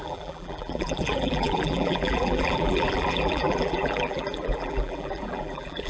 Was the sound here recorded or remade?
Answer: remade